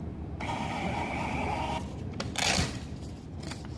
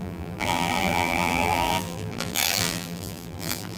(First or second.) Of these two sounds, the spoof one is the second